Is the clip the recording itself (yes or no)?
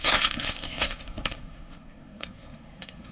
no